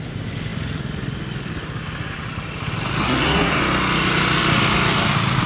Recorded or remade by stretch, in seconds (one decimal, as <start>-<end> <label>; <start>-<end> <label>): 0.0-3.0 recorded; 3.0-3.6 remade; 3.6-5.5 recorded